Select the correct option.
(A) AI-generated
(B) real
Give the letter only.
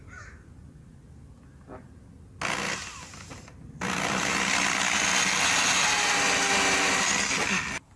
B